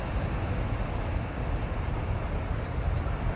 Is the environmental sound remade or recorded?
recorded